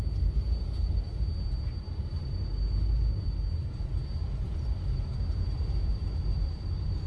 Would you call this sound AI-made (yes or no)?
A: no